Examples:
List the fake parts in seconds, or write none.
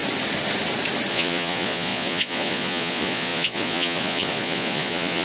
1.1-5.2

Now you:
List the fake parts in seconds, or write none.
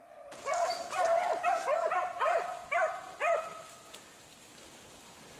none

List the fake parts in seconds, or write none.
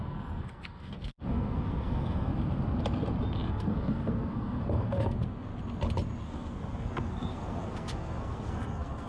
0.0-2.3; 3.5-5.5; 6.2-9.1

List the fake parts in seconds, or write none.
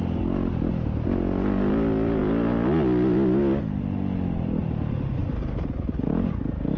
none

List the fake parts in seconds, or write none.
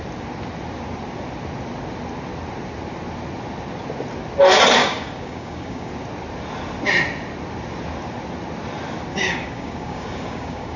4.8-5.9; 9.1-10.8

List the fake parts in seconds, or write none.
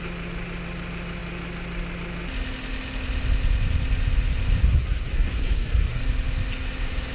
4.6-6.0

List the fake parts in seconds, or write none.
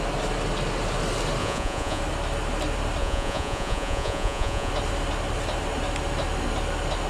1.4-2.0; 3.0-4.7